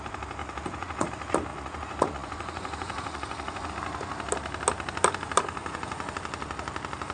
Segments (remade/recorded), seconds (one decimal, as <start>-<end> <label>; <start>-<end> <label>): 0.0-0.4 recorded; 0.4-1.1 remade; 1.1-1.5 recorded; 1.5-3.7 remade; 3.7-5.6 recorded; 5.6-6.1 remade; 6.1-7.1 recorded